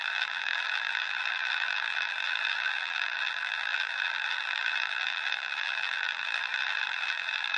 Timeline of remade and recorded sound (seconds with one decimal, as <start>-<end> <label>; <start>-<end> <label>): 0.0-7.6 remade